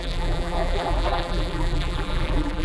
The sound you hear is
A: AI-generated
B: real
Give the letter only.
A